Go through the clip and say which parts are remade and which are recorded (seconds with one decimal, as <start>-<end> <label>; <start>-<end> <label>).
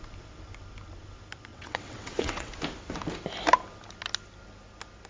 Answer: 0.0-1.5 recorded; 1.5-2.5 remade; 2.5-5.1 recorded